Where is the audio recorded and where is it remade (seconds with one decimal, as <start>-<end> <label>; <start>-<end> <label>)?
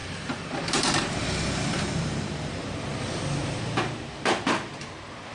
0.0-3.2 remade; 3.2-5.3 recorded